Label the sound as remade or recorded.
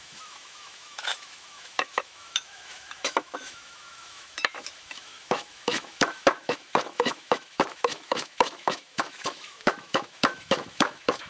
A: remade